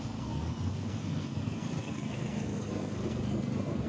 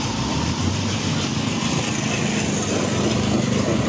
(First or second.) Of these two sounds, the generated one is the first